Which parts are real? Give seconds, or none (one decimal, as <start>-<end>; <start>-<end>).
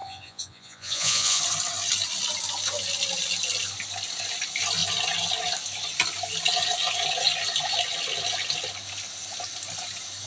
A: 1.4-10.3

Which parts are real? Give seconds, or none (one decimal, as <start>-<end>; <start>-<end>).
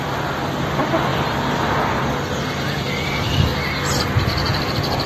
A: 0.0-5.1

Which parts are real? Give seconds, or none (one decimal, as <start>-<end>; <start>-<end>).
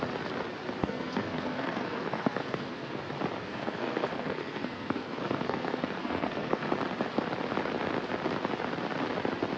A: 0.0-0.8; 3.0-3.4; 6.7-9.6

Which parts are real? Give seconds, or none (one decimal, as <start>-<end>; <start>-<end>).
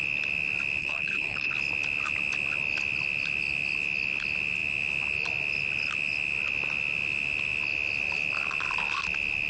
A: 0.0-0.8; 1.5-9.5